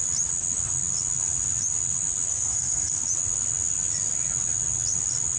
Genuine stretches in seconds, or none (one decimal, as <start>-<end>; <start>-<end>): 0.0-2.3; 3.0-5.4